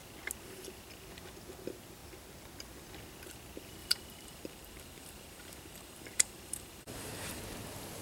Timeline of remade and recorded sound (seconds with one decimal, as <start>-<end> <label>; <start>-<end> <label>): 0.0-3.8 recorded; 3.8-7.4 remade; 7.4-8.0 recorded